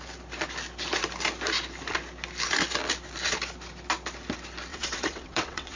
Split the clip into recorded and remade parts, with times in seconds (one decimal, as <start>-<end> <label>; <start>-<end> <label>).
0.0-4.7 recorded; 4.7-5.8 remade